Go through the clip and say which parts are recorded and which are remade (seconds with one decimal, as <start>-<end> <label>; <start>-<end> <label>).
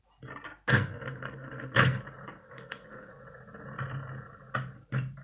0.0-0.7 recorded; 0.7-2.0 remade; 2.0-2.4 recorded; 2.4-3.2 remade; 3.2-5.2 recorded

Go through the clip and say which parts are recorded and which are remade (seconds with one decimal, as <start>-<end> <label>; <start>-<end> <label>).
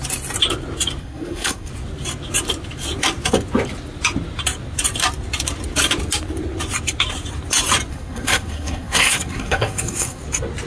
0.0-1.0 recorded; 1.0-1.7 remade; 1.7-7.9 recorded; 7.9-10.2 remade; 10.2-10.7 recorded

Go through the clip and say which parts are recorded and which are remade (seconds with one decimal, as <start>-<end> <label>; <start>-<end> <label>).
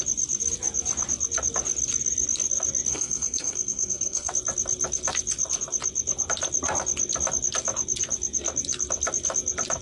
0.0-2.9 recorded; 2.9-4.3 remade; 4.3-9.8 recorded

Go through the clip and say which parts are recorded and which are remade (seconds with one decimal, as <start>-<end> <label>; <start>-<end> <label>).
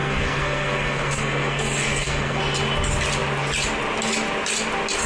0.0-2.4 remade; 2.4-5.1 recorded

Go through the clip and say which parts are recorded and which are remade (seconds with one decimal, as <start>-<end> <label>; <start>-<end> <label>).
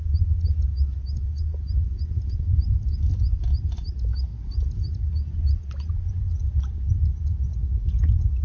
0.0-8.4 recorded